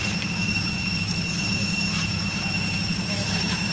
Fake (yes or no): yes